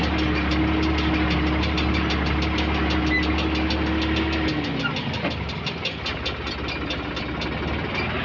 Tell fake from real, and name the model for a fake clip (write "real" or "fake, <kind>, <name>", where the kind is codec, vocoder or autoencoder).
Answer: real